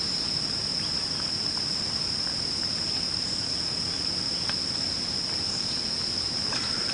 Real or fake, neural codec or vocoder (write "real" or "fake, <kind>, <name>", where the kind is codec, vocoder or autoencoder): real